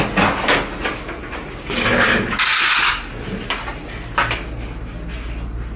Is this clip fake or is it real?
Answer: real